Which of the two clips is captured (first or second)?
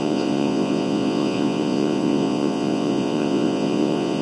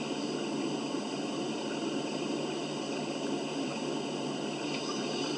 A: second